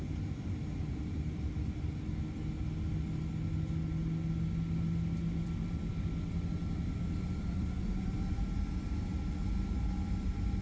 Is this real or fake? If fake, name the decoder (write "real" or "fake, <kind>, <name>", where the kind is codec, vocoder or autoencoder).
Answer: real